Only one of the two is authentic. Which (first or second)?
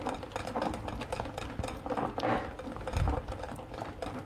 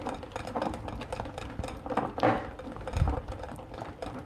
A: first